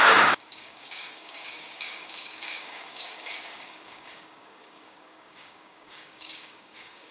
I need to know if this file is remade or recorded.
remade